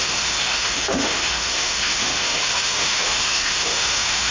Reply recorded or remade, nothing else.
remade